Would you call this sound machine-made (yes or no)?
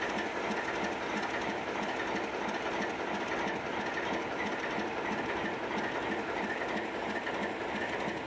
no